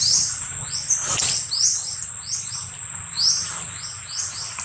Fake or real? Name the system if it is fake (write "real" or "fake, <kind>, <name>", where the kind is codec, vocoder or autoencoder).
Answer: real